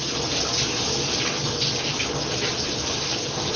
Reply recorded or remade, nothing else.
recorded